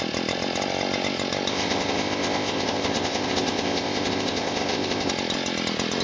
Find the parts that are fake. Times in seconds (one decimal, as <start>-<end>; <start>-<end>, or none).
1.5-5.1